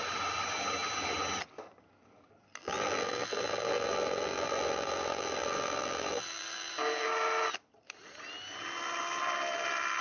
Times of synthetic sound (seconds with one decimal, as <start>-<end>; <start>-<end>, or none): 2.6-6.7